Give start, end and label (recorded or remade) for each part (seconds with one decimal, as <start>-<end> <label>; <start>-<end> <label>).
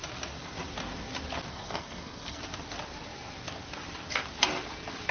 0.0-1.5 recorded; 1.5-2.4 remade; 2.4-5.1 recorded